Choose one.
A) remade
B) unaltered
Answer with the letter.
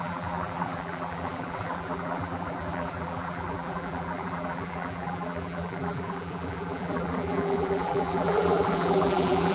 A